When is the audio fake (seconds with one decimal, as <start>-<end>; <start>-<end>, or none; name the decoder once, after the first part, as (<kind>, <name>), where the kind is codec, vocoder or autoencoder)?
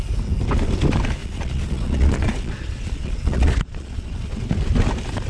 1.2-4.4 (vocoder, Vocos)